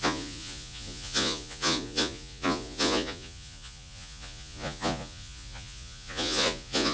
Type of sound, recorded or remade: remade